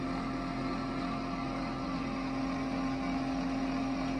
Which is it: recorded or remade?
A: recorded